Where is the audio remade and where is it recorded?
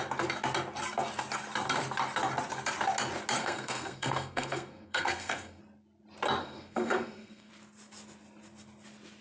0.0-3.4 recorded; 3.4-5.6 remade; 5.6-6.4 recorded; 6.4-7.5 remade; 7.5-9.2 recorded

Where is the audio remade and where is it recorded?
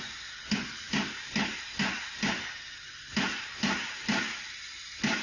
0.0-5.2 recorded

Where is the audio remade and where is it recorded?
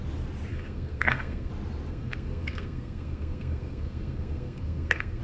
0.0-0.5 recorded; 0.5-1.5 remade; 1.5-1.9 recorded; 1.9-5.2 remade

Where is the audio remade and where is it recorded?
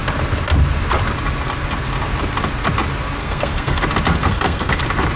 0.0-3.2 recorded; 3.2-3.8 remade; 3.8-4.2 recorded; 4.2-4.8 remade; 4.8-5.2 recorded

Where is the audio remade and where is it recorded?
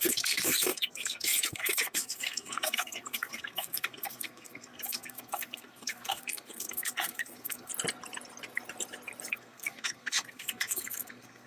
0.0-7.7 remade; 7.7-9.3 recorded; 9.3-11.5 remade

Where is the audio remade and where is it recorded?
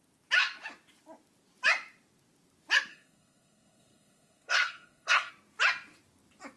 0.0-2.9 recorded; 2.9-5.3 remade; 5.3-6.6 recorded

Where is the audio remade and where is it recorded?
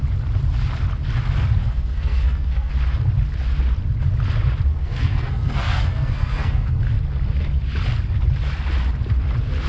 0.0-1.6 recorded; 1.6-2.7 remade; 2.7-4.7 recorded; 4.7-6.8 remade; 6.8-9.7 recorded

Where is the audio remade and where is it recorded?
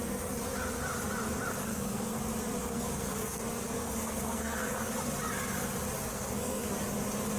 0.0-1.6 recorded; 1.6-2.2 remade; 2.2-2.6 recorded; 2.6-3.4 remade; 3.4-3.8 recorded; 3.8-4.9 remade; 4.9-6.1 recorded; 6.1-6.7 remade; 6.7-7.4 recorded